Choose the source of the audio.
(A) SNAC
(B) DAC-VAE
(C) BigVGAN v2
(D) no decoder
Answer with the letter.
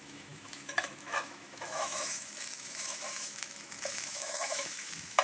B